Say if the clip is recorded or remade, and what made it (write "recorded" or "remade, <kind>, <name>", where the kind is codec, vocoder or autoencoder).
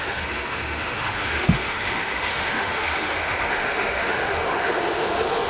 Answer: remade, autoencoder, DAC-VAE